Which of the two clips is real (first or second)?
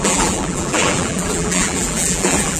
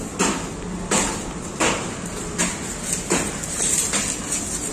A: second